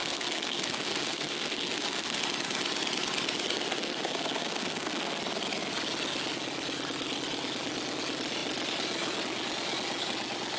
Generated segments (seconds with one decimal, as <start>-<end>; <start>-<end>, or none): 0.0-2.2; 3.8-5.2